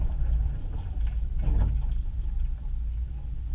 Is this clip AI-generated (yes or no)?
no